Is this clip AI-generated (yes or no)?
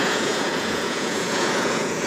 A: yes